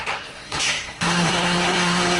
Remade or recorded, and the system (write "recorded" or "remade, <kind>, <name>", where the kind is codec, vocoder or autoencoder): remade, codec, SNAC